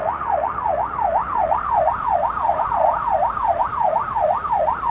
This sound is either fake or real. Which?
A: fake